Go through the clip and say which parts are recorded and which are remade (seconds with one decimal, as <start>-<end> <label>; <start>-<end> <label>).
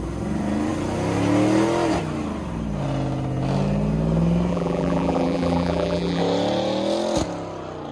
0.0-4.5 recorded; 4.5-6.2 remade; 6.2-7.9 recorded